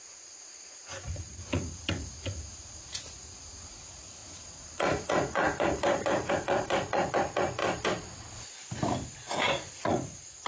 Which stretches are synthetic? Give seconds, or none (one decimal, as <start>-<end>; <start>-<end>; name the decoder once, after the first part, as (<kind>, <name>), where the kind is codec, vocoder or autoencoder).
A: 0.0-7.6 (vocoder, Vocos); 9.3-10.5